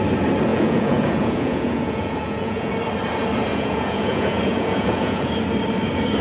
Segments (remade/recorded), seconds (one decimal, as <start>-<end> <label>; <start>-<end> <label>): 0.0-0.5 recorded; 0.5-2.7 remade; 2.7-3.5 recorded; 3.5-5.3 remade; 5.3-6.2 recorded